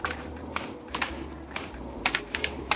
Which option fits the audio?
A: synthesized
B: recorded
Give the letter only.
A